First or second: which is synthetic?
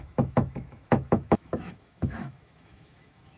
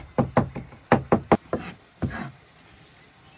first